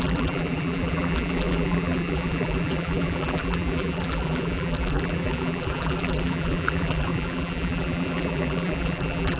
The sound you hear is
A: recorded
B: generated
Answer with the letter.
B